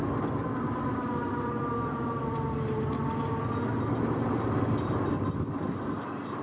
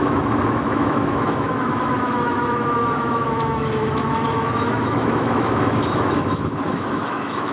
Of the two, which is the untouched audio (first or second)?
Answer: first